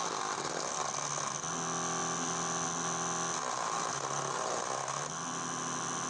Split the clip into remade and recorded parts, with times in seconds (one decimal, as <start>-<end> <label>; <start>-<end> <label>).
0.0-6.1 recorded